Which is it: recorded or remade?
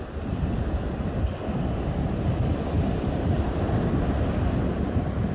recorded